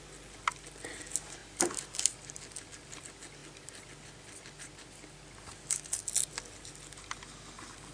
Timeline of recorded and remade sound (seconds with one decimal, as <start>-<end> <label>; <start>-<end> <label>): 0.0-7.9 recorded